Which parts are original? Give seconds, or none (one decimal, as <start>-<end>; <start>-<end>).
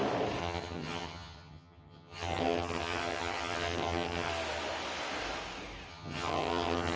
0.0-0.4; 4.3-5.9